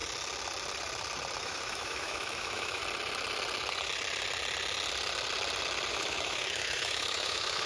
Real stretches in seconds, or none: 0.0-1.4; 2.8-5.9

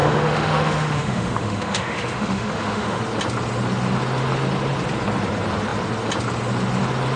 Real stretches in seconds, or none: 3.0-7.2